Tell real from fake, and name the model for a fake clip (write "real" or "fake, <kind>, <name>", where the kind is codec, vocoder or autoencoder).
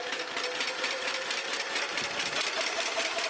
fake, vocoder, BigVGAN v2